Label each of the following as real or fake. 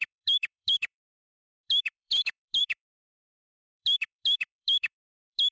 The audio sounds fake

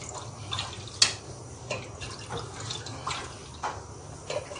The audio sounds real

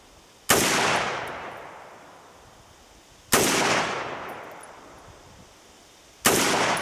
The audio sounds real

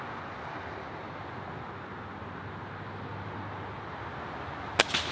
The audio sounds real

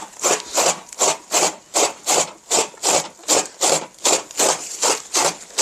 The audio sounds real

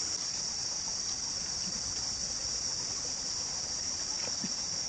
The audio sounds real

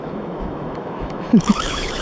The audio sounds fake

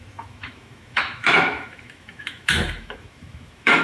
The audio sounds fake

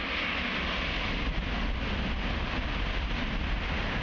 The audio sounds real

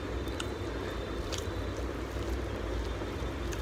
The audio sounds real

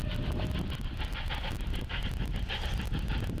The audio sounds real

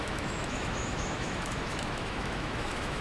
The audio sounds fake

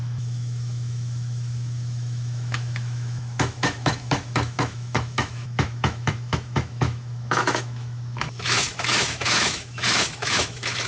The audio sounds fake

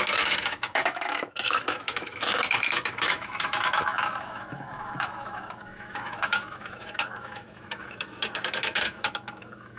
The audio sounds fake